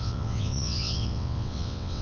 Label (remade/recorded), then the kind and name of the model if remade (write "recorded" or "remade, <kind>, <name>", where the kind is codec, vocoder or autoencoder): remade, vocoder, WaveNeXt